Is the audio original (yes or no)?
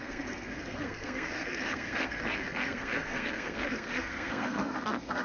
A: no